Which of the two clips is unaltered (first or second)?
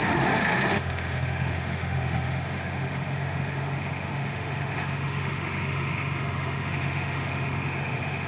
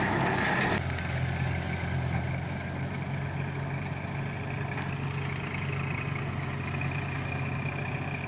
second